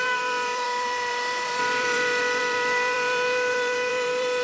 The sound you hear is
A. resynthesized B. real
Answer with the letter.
A